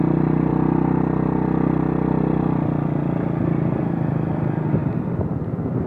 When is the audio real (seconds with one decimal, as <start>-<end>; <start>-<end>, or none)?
0.0-5.9